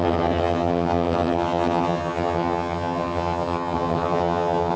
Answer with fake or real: fake